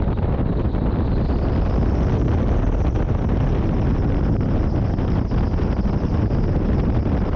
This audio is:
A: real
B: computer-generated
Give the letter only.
A